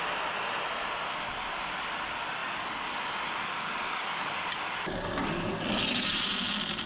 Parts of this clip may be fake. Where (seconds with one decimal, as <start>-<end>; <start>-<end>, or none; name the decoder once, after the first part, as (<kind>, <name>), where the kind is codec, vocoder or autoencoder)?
none